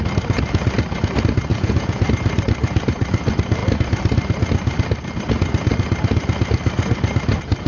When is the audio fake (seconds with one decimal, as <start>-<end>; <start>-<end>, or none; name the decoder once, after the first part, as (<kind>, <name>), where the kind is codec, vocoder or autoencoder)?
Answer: 1.5-2.1 (vocoder, Vocos)